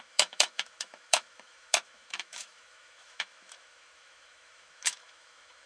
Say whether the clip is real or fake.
fake